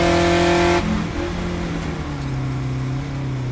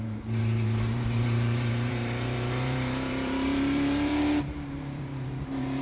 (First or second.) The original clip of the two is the first